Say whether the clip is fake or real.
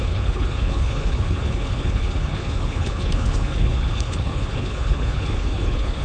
fake